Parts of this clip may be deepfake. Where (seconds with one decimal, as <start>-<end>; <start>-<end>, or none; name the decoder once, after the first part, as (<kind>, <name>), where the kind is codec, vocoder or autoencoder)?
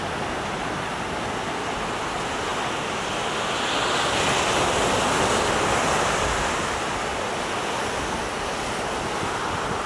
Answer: none